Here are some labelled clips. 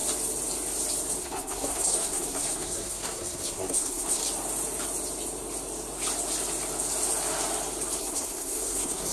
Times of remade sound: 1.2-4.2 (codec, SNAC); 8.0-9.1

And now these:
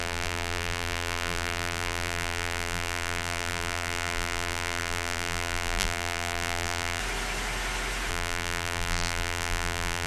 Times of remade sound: 0.0-7.0 (vocoder, BigVGAN v2); 8.1-10.1

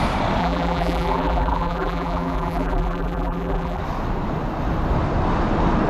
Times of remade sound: 0.4-3.8 (vocoder, BigVGAN v2)

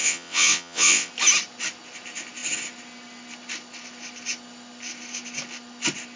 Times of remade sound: 0.0-1.1 (vocoder, WaveNeXt)

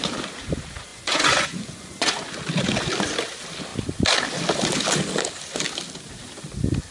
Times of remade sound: 0.9-2.3 (vocoder, Vocos)

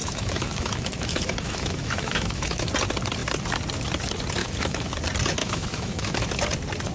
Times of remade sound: 0.0-2.7 (autoencoder, DAC-VAE); 4.4-4.9; 5.4-6.3

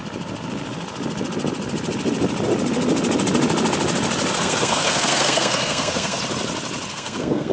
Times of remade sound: 4.4-6.2 (codec, SNAC); 6.9-7.5